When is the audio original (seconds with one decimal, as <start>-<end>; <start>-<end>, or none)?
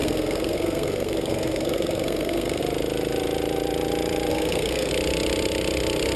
2.6-4.3; 4.9-6.2